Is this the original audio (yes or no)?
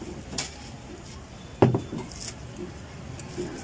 yes